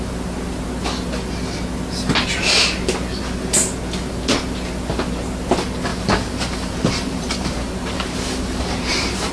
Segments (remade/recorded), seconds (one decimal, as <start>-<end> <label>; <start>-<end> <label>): 0.0-5.9 recorded; 5.9-9.3 remade